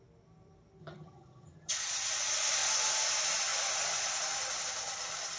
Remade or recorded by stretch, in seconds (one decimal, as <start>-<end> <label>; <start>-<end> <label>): 0.0-0.8 recorded; 0.8-1.7 remade; 1.7-5.4 recorded